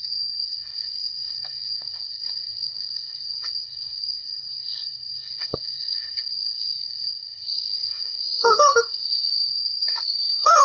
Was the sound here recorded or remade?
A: remade